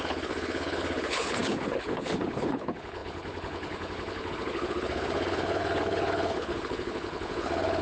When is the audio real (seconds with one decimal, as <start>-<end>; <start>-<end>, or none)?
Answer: none